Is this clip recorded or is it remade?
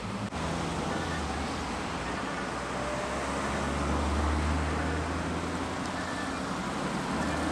recorded